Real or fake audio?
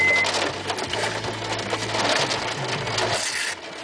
real